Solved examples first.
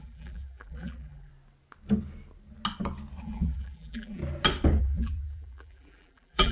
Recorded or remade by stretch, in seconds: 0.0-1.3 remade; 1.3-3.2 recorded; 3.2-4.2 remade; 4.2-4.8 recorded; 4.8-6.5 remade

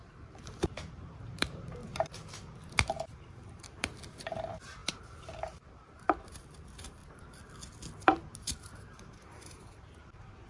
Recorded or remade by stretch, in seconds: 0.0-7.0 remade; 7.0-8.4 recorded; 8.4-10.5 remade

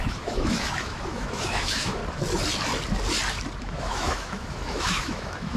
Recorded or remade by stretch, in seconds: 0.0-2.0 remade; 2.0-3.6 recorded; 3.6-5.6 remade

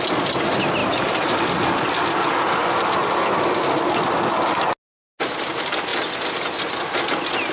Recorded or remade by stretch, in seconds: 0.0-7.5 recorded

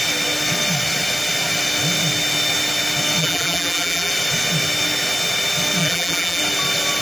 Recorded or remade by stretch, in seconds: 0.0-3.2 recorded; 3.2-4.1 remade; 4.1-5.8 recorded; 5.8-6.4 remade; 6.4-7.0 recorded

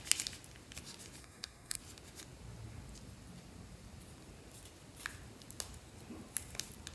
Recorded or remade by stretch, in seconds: 0.0-1.2 recorded; 1.2-1.8 remade; 1.8-6.9 recorded